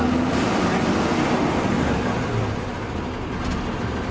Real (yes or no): yes